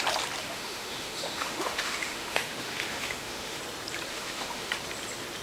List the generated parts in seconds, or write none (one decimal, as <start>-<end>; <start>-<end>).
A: 0.4-3.6; 4.1-4.7